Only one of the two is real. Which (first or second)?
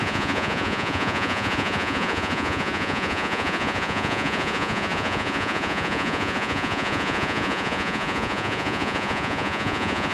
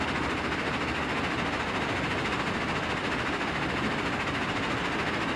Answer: second